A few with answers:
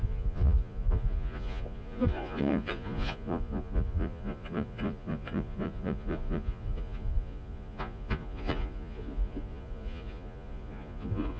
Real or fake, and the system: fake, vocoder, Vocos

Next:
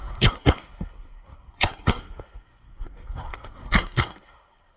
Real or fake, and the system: fake, codec, SNAC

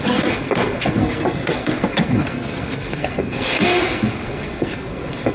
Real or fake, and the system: fake, codec, SNAC